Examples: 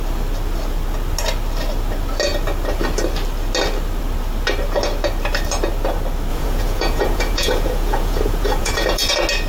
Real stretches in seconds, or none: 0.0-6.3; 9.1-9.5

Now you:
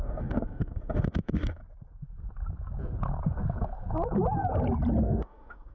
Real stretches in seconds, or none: 1.6-5.0

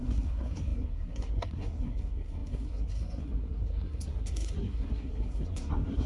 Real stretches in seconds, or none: none

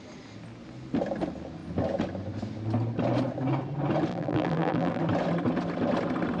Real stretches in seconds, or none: 0.0-4.1; 5.0-6.4